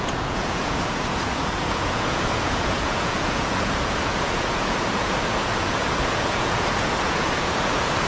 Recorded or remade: remade